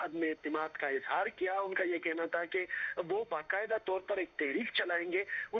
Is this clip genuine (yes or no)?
no